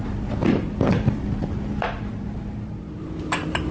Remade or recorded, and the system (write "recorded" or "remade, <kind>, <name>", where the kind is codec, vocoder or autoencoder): recorded